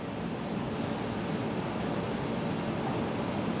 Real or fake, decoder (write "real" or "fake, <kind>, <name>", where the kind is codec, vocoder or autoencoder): real